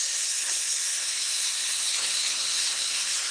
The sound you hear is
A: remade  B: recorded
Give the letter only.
A